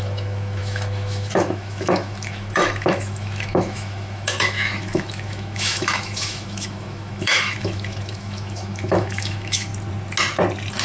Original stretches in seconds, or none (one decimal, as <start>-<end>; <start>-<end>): 9.7-10.8